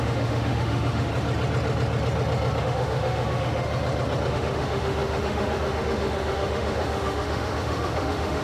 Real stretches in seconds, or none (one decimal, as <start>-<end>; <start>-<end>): 1.1-2.6; 3.7-4.3